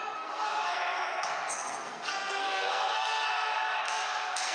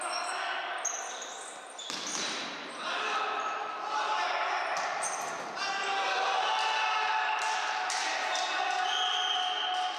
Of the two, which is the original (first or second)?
second